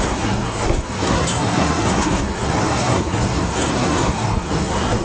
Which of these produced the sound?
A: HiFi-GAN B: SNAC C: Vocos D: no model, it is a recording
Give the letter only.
B